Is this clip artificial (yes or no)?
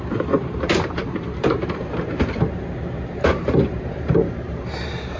yes